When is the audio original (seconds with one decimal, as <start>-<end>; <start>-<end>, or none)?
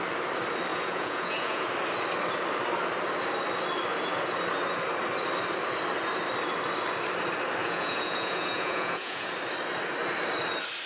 0.0-0.7; 1.7-7.6; 9.3-10.9